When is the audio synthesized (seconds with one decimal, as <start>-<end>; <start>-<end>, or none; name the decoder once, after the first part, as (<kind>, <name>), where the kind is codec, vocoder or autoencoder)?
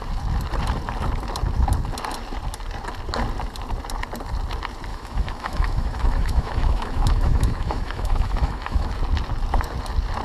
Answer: 4.9-8.9 (autoencoder, DAC-VAE)